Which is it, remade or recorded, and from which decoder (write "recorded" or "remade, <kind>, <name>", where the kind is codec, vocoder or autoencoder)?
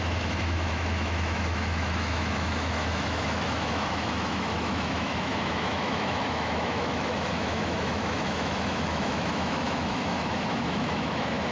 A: remade, autoencoder, DAC-VAE